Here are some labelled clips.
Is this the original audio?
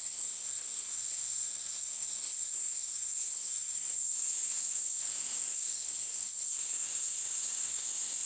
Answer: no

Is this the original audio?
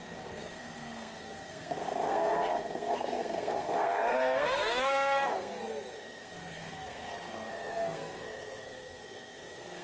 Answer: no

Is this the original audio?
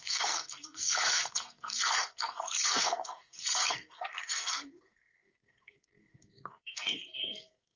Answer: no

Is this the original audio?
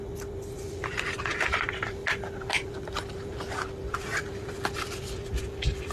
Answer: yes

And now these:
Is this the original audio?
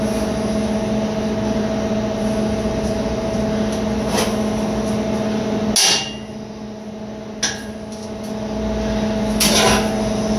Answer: yes